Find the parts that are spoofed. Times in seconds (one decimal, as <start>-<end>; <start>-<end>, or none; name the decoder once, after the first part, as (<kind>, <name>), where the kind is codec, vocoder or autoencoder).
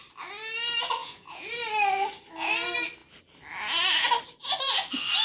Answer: 1.0-1.5 (vocoder, Vocos)